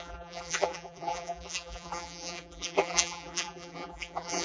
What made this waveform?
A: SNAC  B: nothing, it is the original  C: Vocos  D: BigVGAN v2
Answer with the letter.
D